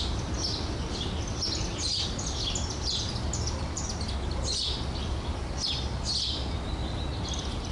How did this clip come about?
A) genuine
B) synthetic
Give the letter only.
A